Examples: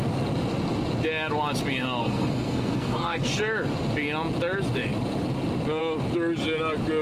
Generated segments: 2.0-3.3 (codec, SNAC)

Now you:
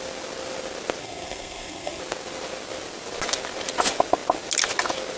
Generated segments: 1.0-2.0 (codec, SNAC)

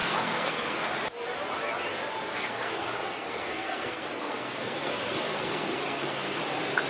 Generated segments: 0.0-0.8 (codec, SNAC); 2.3-6.4

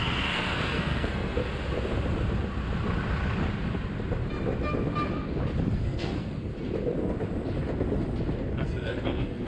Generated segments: 0.0-1.4 (codec, SNAC); 5.7-6.5; 8.5-9.5